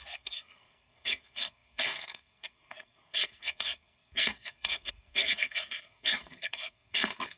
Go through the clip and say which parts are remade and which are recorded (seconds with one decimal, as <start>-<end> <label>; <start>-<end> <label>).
0.0-7.4 remade